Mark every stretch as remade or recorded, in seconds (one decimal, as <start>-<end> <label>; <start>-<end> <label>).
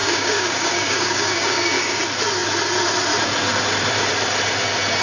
0.0-2.0 remade; 2.0-5.0 recorded